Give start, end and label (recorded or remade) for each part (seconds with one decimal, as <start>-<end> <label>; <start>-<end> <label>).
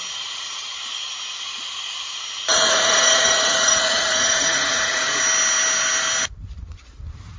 0.0-2.5 recorded; 2.5-5.2 remade; 5.2-7.4 recorded